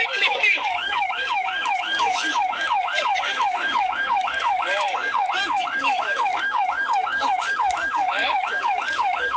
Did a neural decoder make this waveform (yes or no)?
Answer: yes